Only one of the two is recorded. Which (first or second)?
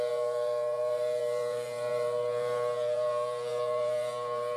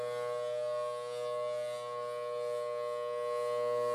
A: second